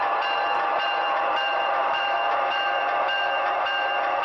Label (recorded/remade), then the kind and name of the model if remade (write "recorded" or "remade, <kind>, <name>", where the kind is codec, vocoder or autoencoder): remade, vocoder, BigVGAN v2